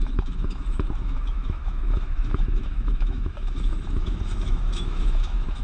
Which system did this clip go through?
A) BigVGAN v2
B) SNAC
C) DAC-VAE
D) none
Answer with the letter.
C